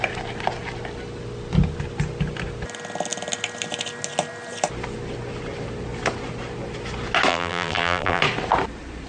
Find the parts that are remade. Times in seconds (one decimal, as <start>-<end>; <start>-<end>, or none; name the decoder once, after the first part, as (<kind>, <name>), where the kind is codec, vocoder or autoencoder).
7.3-8.2 (vocoder, BigVGAN v2)